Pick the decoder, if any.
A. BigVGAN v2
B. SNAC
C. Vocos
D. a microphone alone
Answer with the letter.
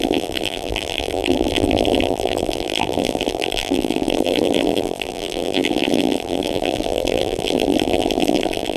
A